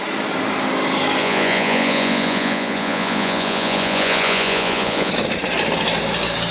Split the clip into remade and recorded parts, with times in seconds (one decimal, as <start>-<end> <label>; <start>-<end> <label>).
0.0-1.2 recorded; 1.2-5.1 remade; 5.1-6.5 recorded

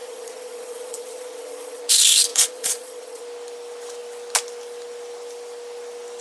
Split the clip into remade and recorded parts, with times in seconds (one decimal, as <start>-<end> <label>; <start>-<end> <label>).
0.0-1.8 remade; 1.8-2.3 recorded; 2.3-3.2 remade; 3.2-6.2 recorded

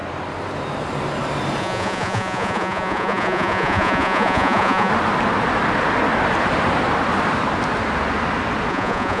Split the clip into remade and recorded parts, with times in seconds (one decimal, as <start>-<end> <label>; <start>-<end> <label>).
0.0-1.6 recorded; 1.6-4.9 remade; 4.9-8.7 recorded; 8.7-9.2 remade

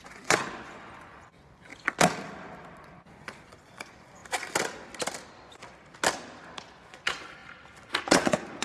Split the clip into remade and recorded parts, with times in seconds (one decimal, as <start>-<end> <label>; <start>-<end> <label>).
0.0-1.7 remade; 1.7-2.8 recorded; 2.8-4.2 remade; 4.2-6.6 recorded; 6.6-7.4 remade; 7.4-8.0 recorded; 8.0-8.6 remade

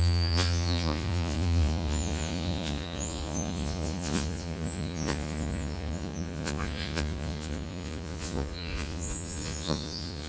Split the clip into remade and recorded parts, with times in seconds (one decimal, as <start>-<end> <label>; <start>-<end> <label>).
0.0-10.3 remade

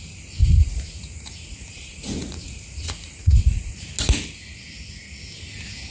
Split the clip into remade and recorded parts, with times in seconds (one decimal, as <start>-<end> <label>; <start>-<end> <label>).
0.0-0.4 recorded; 0.4-3.9 remade; 3.9-5.9 recorded

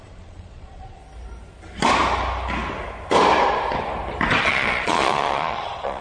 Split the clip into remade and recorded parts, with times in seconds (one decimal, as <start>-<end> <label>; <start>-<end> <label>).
0.0-1.0 remade; 1.0-4.4 recorded; 4.4-6.0 remade

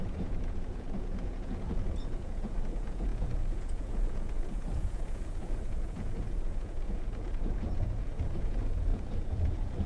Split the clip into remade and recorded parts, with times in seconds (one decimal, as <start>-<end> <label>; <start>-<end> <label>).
0.0-9.9 remade